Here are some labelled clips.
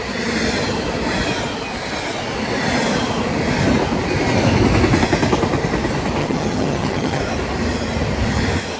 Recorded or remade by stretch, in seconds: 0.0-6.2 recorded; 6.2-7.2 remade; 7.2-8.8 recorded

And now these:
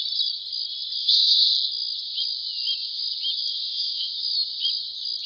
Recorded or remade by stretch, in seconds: 0.0-1.0 recorded; 1.0-1.5 remade; 1.5-3.5 recorded; 3.5-4.1 remade; 4.1-5.3 recorded

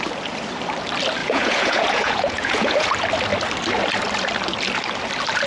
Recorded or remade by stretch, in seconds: 0.0-1.2 recorded; 1.2-2.9 remade; 2.9-5.5 recorded

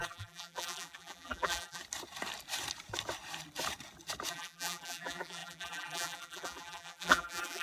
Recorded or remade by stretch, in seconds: 0.0-1.8 remade; 1.8-4.3 recorded; 4.3-7.6 remade

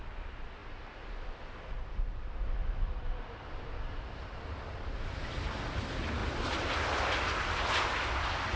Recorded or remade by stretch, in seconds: 0.0-6.2 recorded; 6.2-6.7 remade; 6.7-8.6 recorded

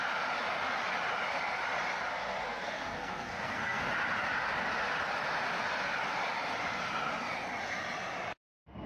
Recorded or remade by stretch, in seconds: 0.0-2.1 recorded; 2.1-3.8 remade; 3.8-8.9 recorded